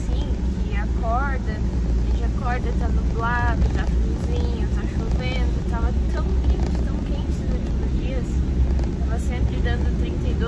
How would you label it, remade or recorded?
recorded